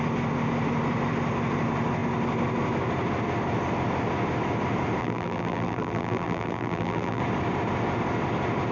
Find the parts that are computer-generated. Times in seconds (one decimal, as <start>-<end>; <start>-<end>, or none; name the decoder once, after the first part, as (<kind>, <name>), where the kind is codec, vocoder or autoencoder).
5.0-7.2 (vocoder, BigVGAN v2)

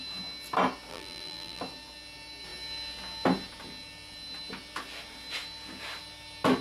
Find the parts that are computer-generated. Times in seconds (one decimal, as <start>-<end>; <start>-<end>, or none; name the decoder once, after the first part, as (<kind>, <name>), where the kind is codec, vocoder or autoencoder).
0.9-1.6 (vocoder, BigVGAN v2)

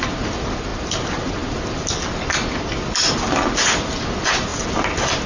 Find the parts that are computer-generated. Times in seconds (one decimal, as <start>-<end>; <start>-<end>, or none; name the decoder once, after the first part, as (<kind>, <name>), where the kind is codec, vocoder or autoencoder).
none